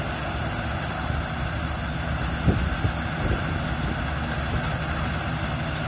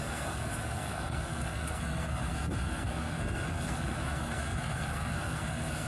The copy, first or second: second